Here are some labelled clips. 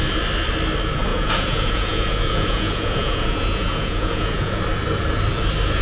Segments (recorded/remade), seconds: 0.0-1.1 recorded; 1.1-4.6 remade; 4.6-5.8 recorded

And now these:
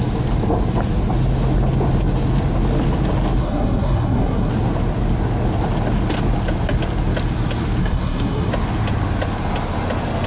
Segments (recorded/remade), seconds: 0.0-3.4 recorded; 3.4-4.5 remade; 4.5-7.8 recorded; 7.8-8.5 remade; 8.5-10.3 recorded

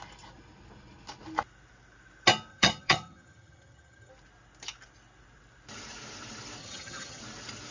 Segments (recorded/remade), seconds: 0.0-2.5 recorded; 2.5-4.1 remade; 4.1-6.6 recorded; 6.6-7.2 remade; 7.2-7.7 recorded

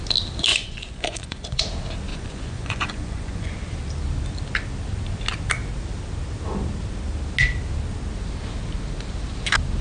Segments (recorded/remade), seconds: 0.0-0.5 recorded; 0.5-1.6 remade; 1.6-2.1 recorded; 2.1-3.5 remade; 3.5-9.8 recorded

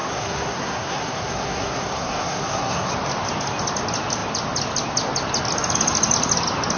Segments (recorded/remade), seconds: 0.0-2.9 remade; 2.9-6.8 recorded

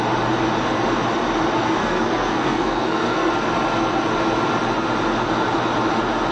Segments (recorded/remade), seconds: 0.0-1.8 recorded; 1.8-3.3 remade; 3.3-6.3 recorded

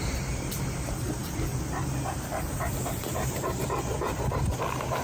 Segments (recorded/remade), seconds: 0.0-1.2 recorded; 1.2-4.2 remade; 4.2-5.0 recorded